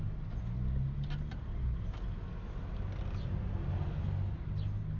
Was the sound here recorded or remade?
recorded